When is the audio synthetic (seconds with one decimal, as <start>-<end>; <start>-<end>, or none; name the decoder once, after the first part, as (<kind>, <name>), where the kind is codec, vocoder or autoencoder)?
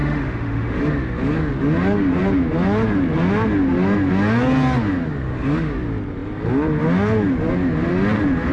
0.0-0.8 (autoencoder, DAC-VAE)